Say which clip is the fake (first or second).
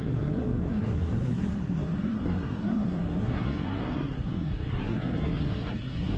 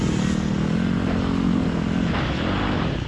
first